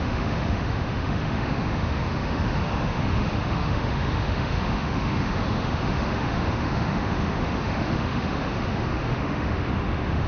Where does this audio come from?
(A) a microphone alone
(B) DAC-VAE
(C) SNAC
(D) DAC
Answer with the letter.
B